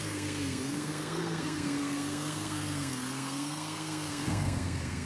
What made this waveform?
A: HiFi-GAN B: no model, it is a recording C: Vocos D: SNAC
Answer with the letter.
D